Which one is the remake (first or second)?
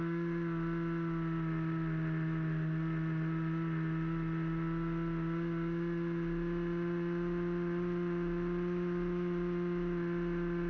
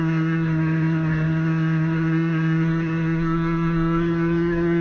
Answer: second